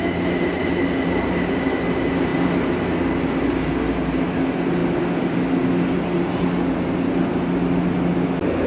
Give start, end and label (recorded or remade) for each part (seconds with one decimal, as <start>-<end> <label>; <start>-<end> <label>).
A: 0.0-8.7 recorded